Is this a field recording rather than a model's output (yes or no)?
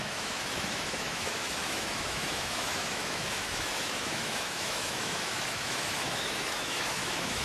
no